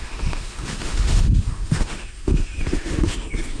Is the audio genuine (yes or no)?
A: no